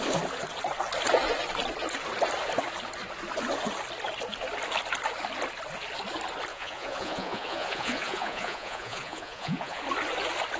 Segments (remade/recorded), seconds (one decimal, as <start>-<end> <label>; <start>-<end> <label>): 0.0-6.5 recorded; 6.5-9.8 remade; 9.8-10.6 recorded

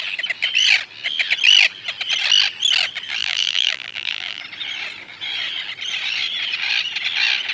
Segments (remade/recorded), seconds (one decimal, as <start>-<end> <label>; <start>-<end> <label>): 0.0-3.2 recorded; 3.2-4.4 remade; 4.4-7.5 recorded

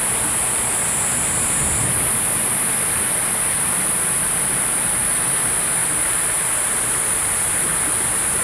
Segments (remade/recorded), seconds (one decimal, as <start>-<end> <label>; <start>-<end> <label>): 0.0-5.8 recorded; 5.8-7.2 remade; 7.2-8.4 recorded